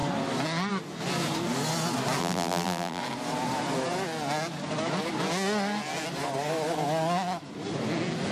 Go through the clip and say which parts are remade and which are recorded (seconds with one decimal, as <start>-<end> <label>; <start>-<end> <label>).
0.0-2.2 recorded; 2.2-3.0 remade; 3.0-8.3 recorded